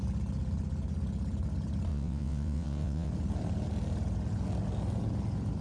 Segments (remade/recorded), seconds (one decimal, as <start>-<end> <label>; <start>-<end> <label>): 0.0-1.9 recorded; 1.9-3.1 remade; 3.1-5.6 recorded